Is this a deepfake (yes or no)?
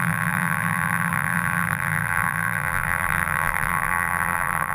yes